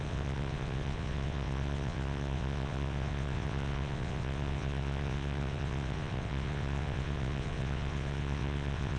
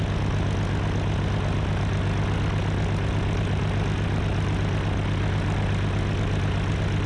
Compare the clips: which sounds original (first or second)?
second